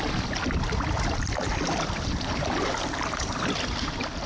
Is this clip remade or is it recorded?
recorded